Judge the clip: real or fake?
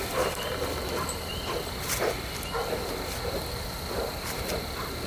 real